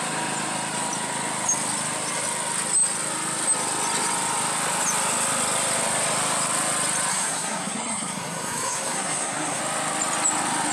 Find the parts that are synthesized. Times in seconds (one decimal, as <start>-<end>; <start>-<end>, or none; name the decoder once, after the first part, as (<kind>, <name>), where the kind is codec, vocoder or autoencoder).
7.1-9.6 (codec, SNAC)